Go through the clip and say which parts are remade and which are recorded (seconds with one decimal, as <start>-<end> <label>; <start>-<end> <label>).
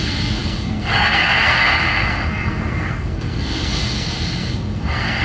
0.0-5.2 remade